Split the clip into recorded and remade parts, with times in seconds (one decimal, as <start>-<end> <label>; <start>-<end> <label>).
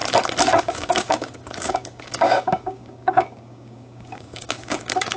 0.0-0.6 recorded; 0.6-5.2 remade